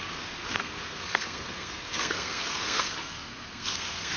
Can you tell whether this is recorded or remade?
remade